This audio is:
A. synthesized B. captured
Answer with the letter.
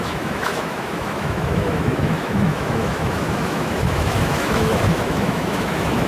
A